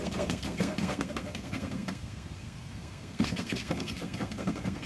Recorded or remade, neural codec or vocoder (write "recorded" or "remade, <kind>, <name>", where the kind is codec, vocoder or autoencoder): remade, codec, SNAC